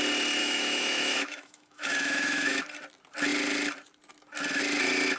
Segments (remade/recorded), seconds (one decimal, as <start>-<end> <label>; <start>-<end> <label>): 0.0-0.4 recorded; 0.4-2.6 remade; 2.6-5.2 recorded